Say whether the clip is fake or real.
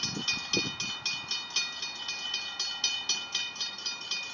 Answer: real